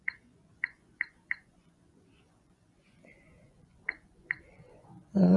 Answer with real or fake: fake